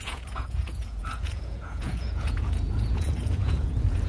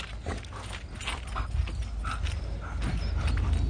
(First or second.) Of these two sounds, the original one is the second